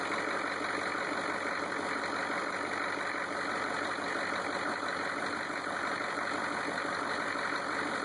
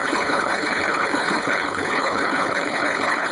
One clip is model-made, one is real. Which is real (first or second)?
first